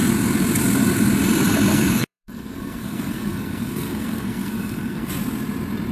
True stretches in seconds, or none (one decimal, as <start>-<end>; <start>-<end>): 0.0-1.7; 5.1-5.9